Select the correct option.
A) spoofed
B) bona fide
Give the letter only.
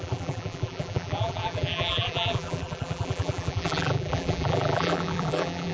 A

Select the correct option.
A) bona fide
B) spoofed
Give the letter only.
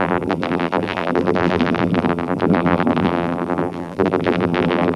B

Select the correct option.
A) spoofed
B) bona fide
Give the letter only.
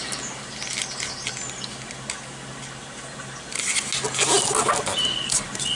B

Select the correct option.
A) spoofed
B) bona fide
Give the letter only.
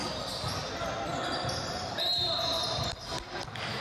B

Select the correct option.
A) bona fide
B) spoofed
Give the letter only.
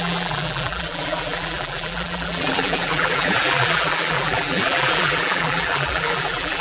B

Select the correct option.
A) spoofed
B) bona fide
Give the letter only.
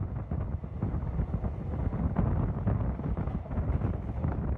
B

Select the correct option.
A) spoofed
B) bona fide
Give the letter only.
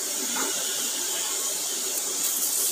B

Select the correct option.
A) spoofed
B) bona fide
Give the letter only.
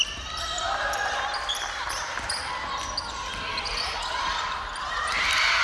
A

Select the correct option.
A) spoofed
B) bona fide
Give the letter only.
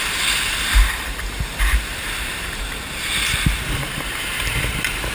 A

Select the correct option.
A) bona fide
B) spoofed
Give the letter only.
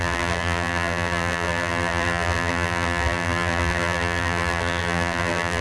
B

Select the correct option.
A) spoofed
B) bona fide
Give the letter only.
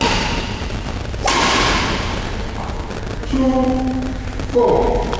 B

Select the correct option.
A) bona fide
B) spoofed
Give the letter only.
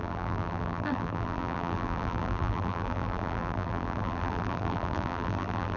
B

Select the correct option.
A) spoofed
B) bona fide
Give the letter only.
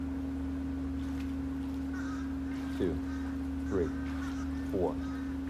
B